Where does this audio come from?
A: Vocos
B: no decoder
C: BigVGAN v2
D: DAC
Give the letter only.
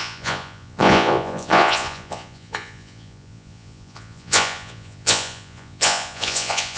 A